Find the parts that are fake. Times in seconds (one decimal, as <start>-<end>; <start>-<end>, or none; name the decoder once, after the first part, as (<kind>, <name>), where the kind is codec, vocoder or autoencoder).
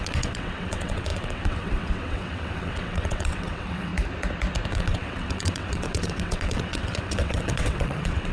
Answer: 0.0-3.9 (vocoder, WaveNeXt); 4.7-8.3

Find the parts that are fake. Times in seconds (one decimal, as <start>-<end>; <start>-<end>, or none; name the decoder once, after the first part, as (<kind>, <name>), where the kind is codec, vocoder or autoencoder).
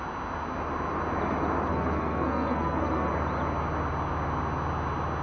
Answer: 1.7-3.1 (codec, SNAC)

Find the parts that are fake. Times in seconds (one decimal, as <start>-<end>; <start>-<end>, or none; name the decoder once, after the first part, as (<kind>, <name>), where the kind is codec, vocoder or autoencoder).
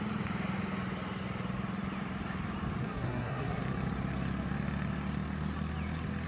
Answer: 2.8-3.6 (codec, SNAC)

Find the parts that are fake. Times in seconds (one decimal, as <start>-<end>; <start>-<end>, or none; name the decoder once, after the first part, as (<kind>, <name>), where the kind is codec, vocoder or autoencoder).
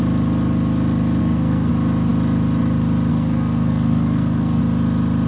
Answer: 1.2-1.7 (codec, SNAC); 3.1-4.6